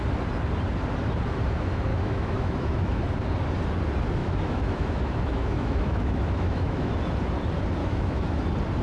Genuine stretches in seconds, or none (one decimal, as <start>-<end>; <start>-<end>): 0.0-1.9; 3.0-4.2; 6.9-7.8; 8.4-8.8